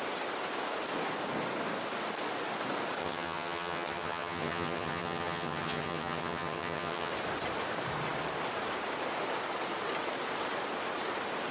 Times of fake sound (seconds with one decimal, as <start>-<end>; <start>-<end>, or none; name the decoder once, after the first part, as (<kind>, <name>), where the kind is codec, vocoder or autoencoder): 3.0-7.1 (vocoder, HiFi-GAN)